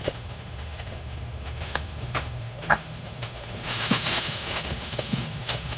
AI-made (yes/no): yes